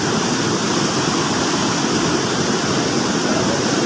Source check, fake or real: real